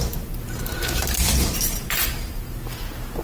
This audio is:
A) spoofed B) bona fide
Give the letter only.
B